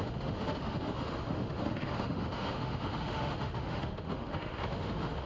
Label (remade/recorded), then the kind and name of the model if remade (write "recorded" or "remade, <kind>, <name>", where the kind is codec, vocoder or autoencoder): remade, autoencoder, DAC-VAE